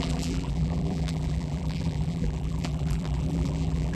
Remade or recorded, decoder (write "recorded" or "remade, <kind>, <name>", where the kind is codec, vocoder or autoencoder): remade, vocoder, BigVGAN v2